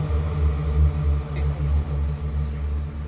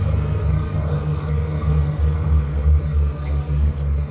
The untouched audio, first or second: first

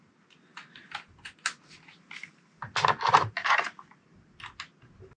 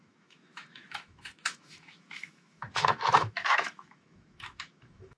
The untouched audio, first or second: first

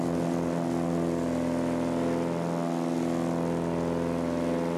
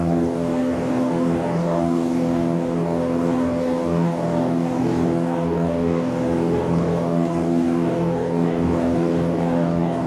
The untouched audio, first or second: first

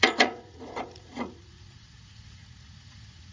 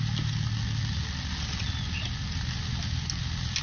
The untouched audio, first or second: second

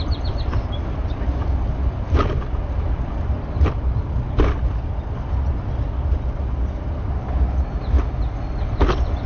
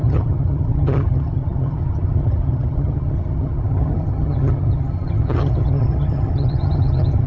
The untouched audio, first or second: first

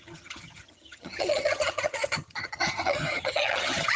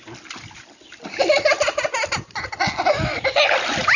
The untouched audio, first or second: second